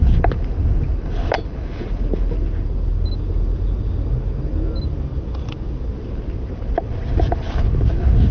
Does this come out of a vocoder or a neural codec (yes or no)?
no